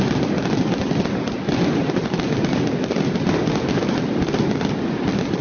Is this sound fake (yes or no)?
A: no